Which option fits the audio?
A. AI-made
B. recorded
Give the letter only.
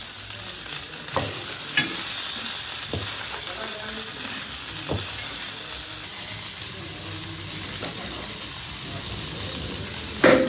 B